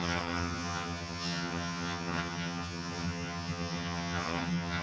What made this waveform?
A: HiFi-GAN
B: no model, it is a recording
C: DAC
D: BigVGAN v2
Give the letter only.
A